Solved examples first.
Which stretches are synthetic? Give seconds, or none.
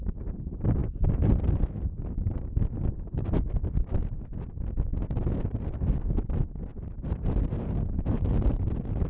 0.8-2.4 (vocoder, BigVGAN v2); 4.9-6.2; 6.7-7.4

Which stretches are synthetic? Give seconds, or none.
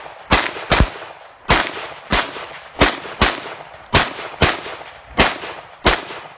1.6-2.7 (vocoder, BigVGAN v2)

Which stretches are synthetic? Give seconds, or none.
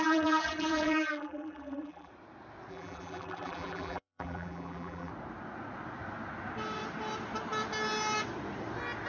0.0-2.1 (vocoder, BigVGAN v2); 2.7-5.1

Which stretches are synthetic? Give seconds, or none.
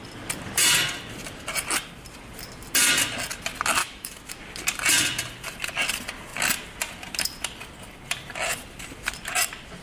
3.8-4.4 (autoencoder, DAC-VAE)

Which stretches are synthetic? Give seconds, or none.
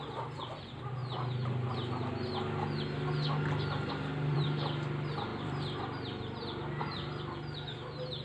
0.0-1.0 (vocoder, BigVGAN v2); 3.9-8.2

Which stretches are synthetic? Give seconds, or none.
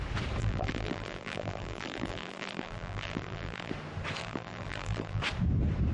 0.4-3.7 (vocoder, BigVGAN v2); 4.2-5.2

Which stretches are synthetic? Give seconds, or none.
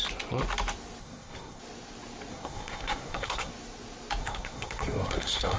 1.0-1.6 (codec, SNAC); 2.3-3.5; 4.2-5.6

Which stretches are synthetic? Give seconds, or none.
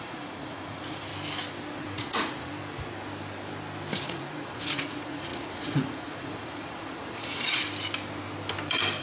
0.0-1.1 (vocoder, Vocos); 1.8-2.5; 4.0-7.6